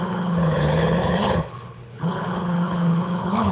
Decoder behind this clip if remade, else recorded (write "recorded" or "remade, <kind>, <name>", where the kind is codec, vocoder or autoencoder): remade, codec, HILCodec